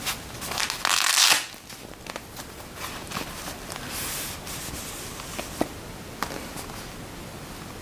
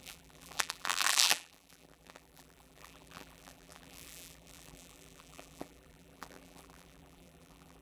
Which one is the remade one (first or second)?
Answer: second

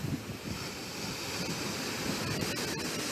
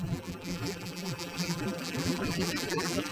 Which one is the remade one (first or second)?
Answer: second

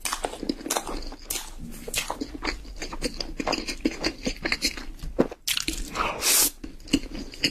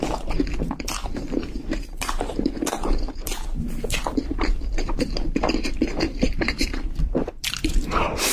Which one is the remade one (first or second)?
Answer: second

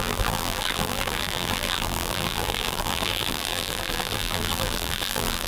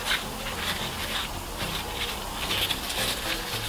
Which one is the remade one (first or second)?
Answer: first